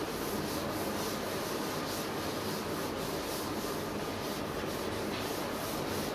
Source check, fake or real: real